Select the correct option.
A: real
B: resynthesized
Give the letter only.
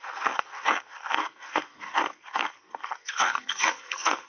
B